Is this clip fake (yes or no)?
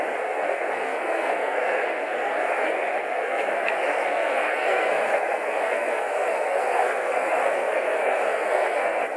yes